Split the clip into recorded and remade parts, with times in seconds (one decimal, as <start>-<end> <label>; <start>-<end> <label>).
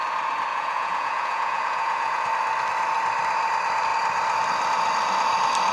0.0-0.5 recorded; 0.5-2.3 remade; 2.3-5.7 recorded